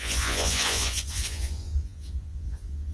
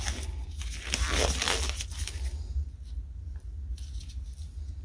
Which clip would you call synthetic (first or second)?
first